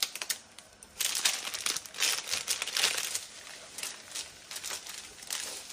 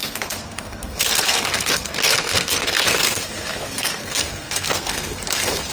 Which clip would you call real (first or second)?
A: first